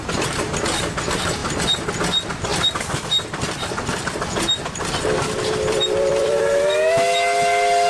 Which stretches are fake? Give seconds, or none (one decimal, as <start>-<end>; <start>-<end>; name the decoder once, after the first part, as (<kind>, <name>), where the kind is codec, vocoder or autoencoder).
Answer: 1.4-1.9 (vocoder, BigVGAN v2); 2.5-6.4